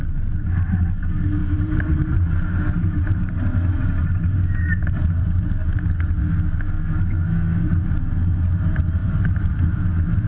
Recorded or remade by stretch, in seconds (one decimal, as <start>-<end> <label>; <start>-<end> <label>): 0.0-1.4 recorded; 1.4-3.3 remade; 3.3-9.0 recorded; 9.0-10.3 remade